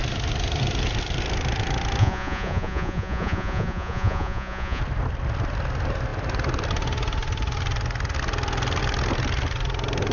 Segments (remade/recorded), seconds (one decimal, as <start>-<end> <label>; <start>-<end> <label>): 0.0-2.0 recorded; 2.0-4.8 remade; 4.8-10.1 recorded